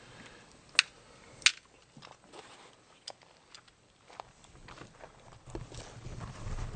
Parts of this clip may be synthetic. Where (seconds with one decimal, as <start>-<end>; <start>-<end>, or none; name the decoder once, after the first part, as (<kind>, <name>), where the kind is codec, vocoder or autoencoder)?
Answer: none